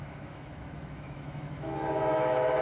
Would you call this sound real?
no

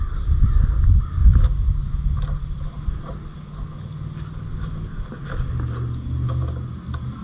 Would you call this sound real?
yes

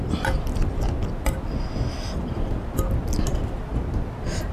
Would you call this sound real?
yes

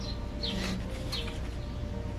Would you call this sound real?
yes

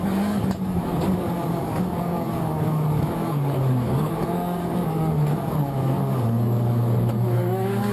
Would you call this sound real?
no